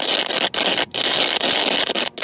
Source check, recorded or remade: recorded